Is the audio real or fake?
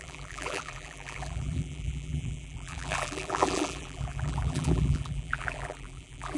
fake